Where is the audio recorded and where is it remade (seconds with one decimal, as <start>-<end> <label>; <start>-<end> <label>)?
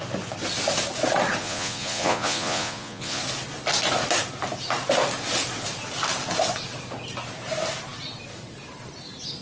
0.0-1.4 recorded; 1.4-3.2 remade; 3.2-9.4 recorded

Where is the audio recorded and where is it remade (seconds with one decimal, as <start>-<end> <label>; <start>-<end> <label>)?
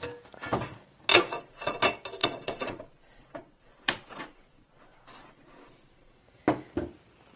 0.0-1.1 recorded; 1.1-1.8 remade; 1.8-2.2 recorded; 2.2-6.2 remade; 6.2-7.4 recorded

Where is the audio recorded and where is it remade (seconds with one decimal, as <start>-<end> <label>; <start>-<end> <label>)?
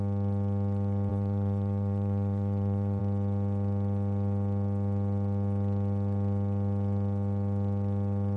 0.0-1.1 recorded; 1.1-3.0 remade; 3.0-8.4 recorded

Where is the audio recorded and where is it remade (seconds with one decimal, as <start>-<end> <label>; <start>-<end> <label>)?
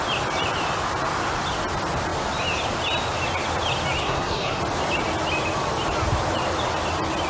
0.0-4.0 recorded; 4.0-4.6 remade; 4.6-7.3 recorded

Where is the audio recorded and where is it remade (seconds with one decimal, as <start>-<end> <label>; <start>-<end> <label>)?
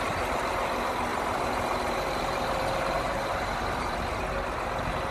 0.0-1.1 recorded; 1.1-4.2 remade; 4.2-5.1 recorded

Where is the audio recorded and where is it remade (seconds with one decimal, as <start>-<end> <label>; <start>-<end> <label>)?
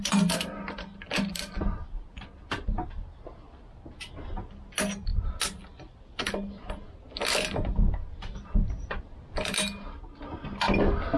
0.0-11.2 recorded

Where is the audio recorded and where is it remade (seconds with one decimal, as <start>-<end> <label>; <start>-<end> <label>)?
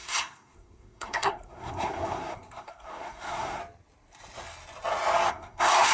0.0-3.6 remade; 3.6-5.3 recorded; 5.3-5.9 remade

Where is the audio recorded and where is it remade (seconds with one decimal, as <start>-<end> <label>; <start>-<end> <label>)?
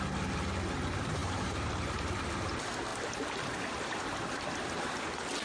0.0-5.4 recorded